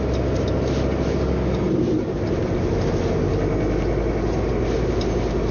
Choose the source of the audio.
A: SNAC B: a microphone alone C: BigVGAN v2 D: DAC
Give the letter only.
B